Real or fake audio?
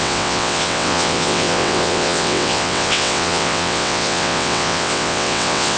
fake